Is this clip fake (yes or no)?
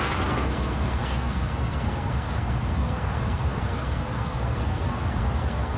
yes